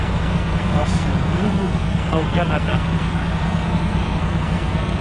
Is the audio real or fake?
fake